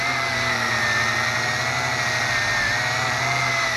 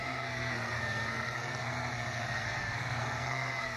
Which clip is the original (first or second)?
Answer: first